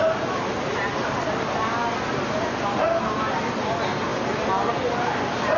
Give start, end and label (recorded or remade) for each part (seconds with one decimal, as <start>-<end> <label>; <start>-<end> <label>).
0.0-5.6 recorded